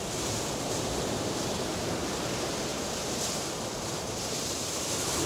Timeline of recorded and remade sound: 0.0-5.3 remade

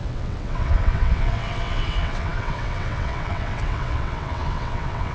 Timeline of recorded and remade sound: 0.0-5.1 remade

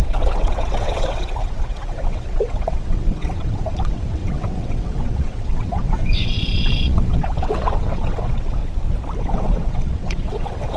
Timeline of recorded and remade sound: 0.0-8.6 remade; 8.6-9.2 recorded; 9.2-10.8 remade

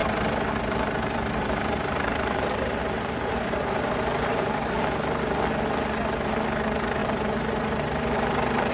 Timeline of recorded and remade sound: 0.0-4.7 remade; 4.7-7.0 recorded; 7.0-8.7 remade

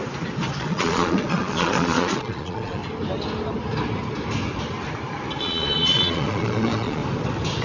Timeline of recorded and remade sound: 0.0-0.6 recorded; 0.6-2.8 remade; 2.8-5.4 recorded; 5.4-7.0 remade; 7.0-7.6 recorded

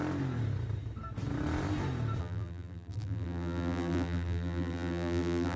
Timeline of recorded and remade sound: 0.0-2.2 recorded; 2.2-5.6 remade